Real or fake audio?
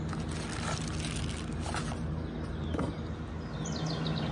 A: real